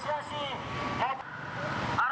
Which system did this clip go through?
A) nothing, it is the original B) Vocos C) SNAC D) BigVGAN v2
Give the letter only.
A